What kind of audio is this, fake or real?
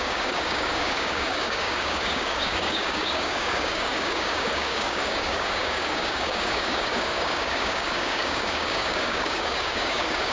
fake